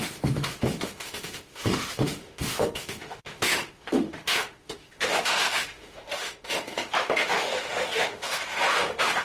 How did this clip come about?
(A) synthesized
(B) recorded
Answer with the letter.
A